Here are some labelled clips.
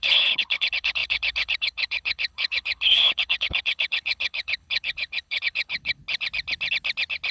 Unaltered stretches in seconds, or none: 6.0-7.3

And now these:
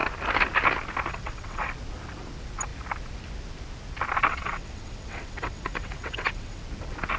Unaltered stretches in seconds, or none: 0.0-1.1; 1.7-4.3; 6.6-7.2

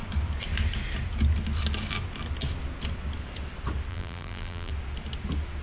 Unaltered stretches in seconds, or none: 0.0-3.9; 4.7-5.6

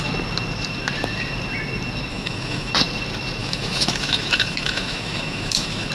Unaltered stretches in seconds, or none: 0.0-2.1; 2.7-3.4

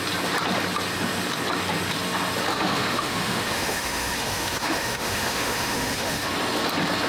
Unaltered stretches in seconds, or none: 0.0-2.5; 6.3-7.1